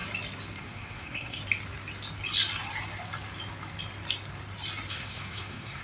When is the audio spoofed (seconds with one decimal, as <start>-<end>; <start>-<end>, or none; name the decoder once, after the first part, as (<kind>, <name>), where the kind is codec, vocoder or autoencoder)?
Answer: 0.6-1.4 (codec, SNAC); 4.9-5.8